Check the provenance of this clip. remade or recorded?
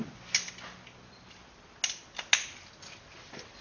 recorded